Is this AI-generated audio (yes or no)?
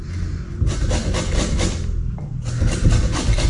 no